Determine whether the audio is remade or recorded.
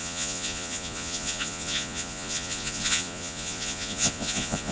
remade